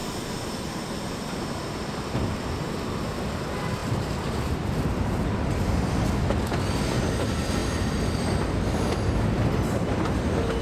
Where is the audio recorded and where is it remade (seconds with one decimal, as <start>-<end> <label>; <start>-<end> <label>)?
0.0-3.8 recorded; 3.8-5.9 remade; 5.9-10.6 recorded